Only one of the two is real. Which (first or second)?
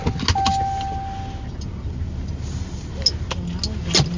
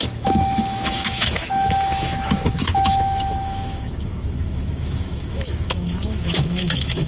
first